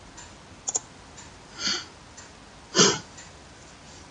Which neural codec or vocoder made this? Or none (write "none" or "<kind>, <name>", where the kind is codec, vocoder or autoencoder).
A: none